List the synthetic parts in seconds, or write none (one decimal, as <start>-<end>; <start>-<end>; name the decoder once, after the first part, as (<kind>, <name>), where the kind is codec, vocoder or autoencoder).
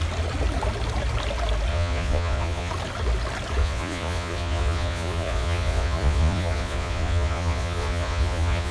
1.7-2.7 (vocoder, Vocos); 3.6-8.7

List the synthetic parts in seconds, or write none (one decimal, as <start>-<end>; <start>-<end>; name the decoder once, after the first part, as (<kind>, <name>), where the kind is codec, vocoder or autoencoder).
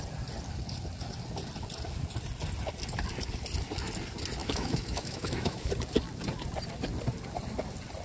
4.4-5.7 (autoencoder, DAC-VAE)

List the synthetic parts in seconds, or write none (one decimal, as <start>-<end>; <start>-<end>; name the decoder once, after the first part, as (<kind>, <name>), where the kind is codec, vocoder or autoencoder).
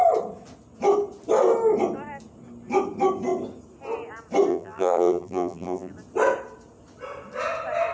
4.5-5.9 (vocoder, BigVGAN v2)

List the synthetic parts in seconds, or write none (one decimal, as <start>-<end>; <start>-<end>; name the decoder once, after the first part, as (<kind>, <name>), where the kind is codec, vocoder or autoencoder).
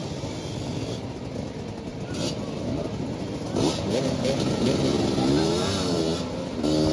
1.9-6.0 (vocoder, BigVGAN v2)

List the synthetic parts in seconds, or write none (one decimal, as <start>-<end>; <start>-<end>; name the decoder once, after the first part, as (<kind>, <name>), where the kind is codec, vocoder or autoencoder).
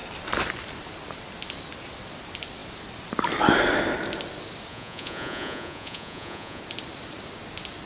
4.7-6.6 (vocoder, Vocos)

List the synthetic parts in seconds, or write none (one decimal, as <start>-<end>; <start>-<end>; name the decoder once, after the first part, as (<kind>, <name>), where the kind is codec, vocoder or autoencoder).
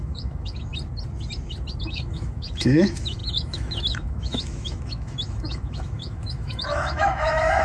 0.0-0.7 (autoencoder, DAC-VAE); 1.8-7.6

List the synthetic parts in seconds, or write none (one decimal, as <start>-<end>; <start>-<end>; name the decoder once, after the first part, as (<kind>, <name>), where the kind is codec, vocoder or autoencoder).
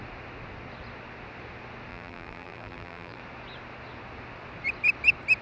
1.9-3.2 (vocoder, BigVGAN v2)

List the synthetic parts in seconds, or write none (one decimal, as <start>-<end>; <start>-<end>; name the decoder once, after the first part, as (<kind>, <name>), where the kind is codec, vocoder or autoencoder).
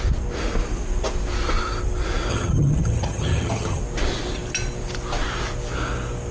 2.3-3.8 (vocoder, HiFi-GAN)